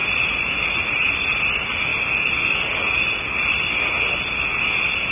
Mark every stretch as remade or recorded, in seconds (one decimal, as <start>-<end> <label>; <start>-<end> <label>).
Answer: 0.0-1.2 remade; 1.2-5.1 recorded